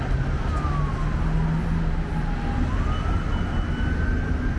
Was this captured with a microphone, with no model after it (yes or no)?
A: yes